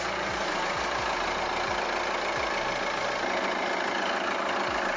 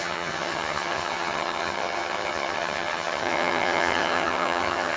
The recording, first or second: first